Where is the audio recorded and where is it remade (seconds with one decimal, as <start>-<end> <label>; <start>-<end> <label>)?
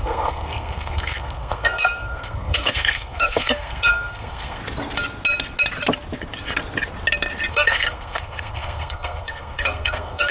0.0-4.6 remade; 4.6-7.5 recorded; 7.5-10.3 remade